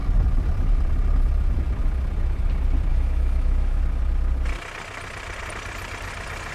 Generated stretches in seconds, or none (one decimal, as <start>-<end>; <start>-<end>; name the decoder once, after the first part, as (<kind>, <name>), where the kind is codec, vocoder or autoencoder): 2.9-3.8 (autoencoder, DAC-VAE)